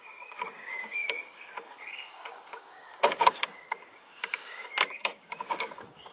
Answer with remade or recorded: remade